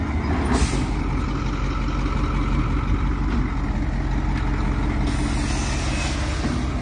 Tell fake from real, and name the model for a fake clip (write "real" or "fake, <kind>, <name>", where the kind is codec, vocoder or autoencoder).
real